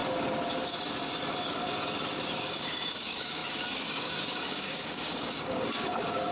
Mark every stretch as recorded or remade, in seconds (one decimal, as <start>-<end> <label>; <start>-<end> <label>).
0.0-2.4 recorded; 2.4-6.3 remade